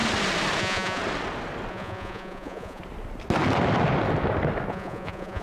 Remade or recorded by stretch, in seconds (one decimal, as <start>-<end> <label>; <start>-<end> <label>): 0.0-0.6 recorded; 0.6-1.0 remade; 1.0-1.7 recorded; 1.7-2.8 remade; 2.8-4.7 recorded; 4.7-5.4 remade